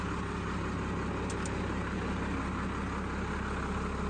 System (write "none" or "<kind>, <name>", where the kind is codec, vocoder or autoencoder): none